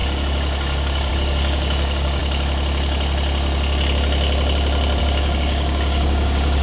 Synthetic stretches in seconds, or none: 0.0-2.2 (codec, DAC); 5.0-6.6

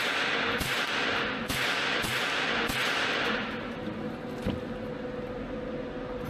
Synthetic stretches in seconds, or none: none

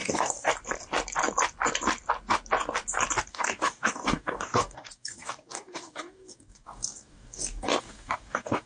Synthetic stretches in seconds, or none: 0.0-0.5 (codec, DAC); 3.3-8.7